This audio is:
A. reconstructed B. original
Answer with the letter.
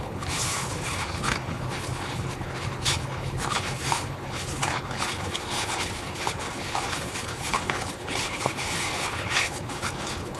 A